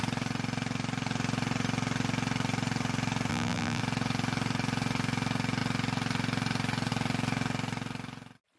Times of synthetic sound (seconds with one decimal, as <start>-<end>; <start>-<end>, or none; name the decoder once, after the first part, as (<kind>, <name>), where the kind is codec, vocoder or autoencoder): 3.3-3.8 (vocoder, BigVGAN v2)